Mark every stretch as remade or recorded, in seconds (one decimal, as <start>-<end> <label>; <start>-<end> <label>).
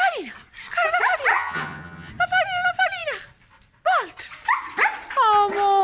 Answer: 0.0-1.3 recorded; 1.3-2.1 remade; 2.1-5.8 recorded